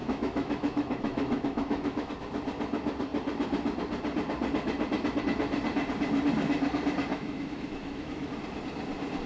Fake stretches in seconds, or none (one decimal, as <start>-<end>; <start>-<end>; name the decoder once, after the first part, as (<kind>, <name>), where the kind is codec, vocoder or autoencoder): 0.0-2.1 (autoencoder, DAC-VAE); 7.1-8.3